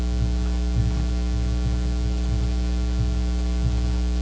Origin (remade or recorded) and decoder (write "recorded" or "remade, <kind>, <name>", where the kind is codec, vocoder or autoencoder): recorded